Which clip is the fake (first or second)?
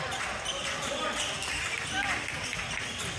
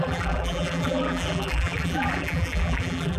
second